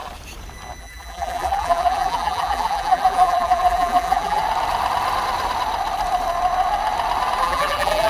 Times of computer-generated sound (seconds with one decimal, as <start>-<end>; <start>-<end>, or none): 0.8-4.4; 7.4-8.1

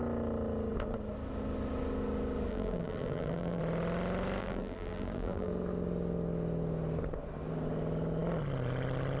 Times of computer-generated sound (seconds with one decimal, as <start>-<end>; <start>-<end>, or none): 2.5-3.6; 4.4-5.5

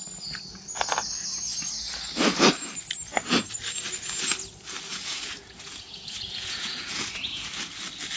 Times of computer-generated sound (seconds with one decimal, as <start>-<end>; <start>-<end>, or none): 4.9-7.5

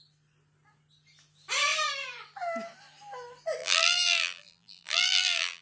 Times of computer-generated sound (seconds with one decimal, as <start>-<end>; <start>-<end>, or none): 3.6-5.6

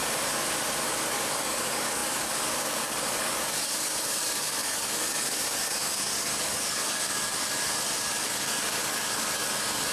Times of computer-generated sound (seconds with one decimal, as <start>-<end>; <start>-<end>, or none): 1.0-9.9

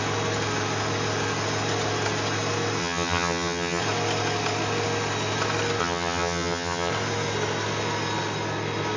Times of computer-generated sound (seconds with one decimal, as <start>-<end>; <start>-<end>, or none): 2.8-3.8; 5.8-6.9